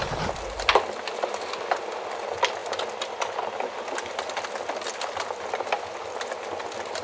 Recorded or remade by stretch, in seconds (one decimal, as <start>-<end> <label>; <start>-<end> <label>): 0.0-7.0 recorded